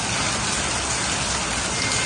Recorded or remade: recorded